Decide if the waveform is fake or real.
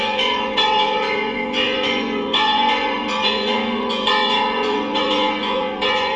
fake